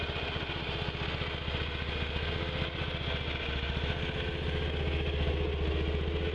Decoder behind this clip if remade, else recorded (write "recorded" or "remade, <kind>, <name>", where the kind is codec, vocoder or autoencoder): recorded